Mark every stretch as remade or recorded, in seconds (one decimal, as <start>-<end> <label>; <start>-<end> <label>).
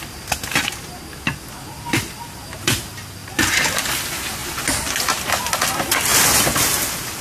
0.0-3.2 recorded; 3.2-3.8 remade; 3.8-7.2 recorded